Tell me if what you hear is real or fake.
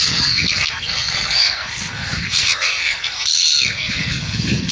fake